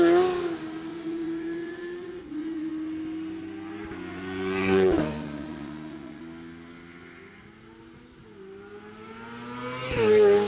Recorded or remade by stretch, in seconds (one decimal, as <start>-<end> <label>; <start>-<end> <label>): 0.0-0.9 recorded; 0.9-2.7 remade; 2.7-4.1 recorded; 4.1-6.2 remade; 6.2-10.5 recorded